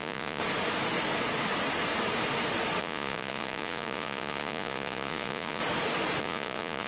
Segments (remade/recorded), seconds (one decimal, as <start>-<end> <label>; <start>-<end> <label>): 0.0-0.4 remade; 0.4-2.8 recorded; 2.8-5.6 remade; 5.6-6.2 recorded; 6.2-6.9 remade